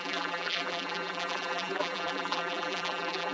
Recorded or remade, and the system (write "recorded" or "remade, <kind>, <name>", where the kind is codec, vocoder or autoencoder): remade, vocoder, BigVGAN v2